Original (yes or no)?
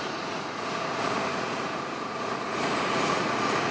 no